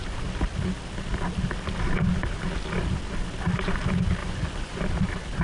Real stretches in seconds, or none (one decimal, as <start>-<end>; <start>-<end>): 0.0-4.2; 4.8-5.4